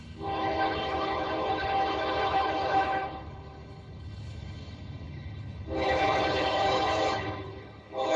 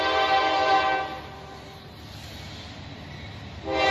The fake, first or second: first